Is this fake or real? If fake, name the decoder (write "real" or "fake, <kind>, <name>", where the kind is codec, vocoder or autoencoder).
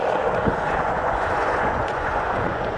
fake, vocoder, Vocos